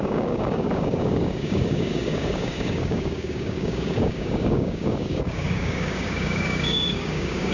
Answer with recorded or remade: remade